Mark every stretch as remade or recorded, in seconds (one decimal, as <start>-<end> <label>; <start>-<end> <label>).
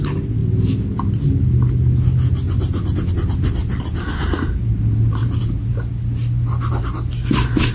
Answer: 0.0-3.6 recorded; 3.6-4.5 remade; 4.5-5.2 recorded; 5.2-5.7 remade; 5.7-7.7 recorded